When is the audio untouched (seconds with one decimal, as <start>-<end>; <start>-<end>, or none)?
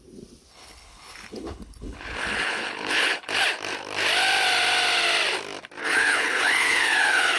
0.0-0.5; 3.3-5.8